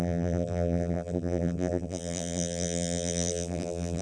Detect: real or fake fake